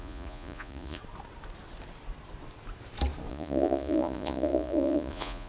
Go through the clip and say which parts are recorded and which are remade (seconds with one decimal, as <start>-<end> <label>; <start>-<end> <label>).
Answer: 0.0-1.0 remade; 1.0-3.3 recorded; 3.3-5.5 remade